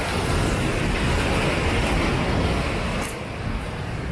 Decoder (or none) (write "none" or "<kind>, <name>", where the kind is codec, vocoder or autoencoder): none